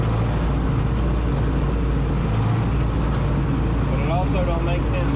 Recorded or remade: recorded